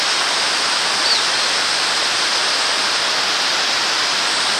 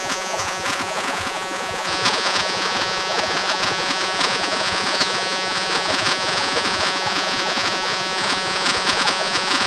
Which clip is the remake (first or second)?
second